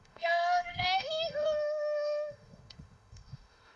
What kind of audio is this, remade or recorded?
remade